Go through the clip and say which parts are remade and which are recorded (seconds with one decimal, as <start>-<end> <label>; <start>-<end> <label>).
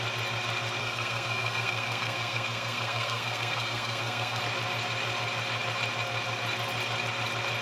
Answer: 0.0-0.8 recorded; 0.8-4.4 remade; 4.4-7.6 recorded